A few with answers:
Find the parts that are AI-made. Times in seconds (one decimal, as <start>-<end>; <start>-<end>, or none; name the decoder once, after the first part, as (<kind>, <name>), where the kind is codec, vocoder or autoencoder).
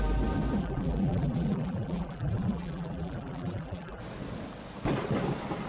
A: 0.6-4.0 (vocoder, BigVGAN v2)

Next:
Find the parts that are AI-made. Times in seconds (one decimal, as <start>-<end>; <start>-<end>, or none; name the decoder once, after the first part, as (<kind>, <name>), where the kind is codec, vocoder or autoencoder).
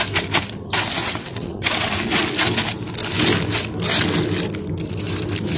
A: 1.0-1.9 (vocoder, WaveNeXt)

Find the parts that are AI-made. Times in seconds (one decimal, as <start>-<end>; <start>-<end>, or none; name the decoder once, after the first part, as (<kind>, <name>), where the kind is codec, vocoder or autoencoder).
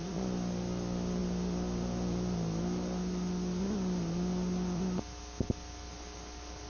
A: none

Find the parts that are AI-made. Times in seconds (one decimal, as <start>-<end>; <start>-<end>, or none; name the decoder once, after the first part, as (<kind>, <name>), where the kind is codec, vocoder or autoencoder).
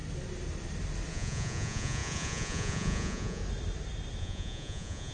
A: 1.1-3.4 (vocoder, Vocos); 4.2-5.1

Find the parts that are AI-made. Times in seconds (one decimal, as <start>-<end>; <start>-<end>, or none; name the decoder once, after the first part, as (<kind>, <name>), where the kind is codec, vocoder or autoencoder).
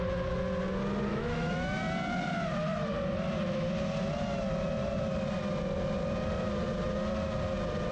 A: 1.1-1.8 (autoencoder, DAC-VAE)